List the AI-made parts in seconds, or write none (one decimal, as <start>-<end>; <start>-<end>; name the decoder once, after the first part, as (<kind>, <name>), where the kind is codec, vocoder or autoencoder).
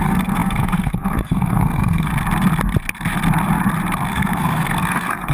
0.0-2.1 (codec, SNAC); 4.1-5.3